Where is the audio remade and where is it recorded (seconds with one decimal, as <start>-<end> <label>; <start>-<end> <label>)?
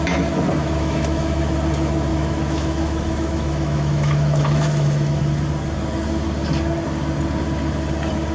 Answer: 0.0-0.6 recorded; 0.6-1.4 remade; 1.4-2.1 recorded; 2.1-5.2 remade; 5.2-8.3 recorded